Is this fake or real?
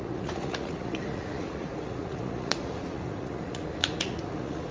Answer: fake